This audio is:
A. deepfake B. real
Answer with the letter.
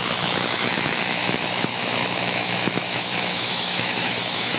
A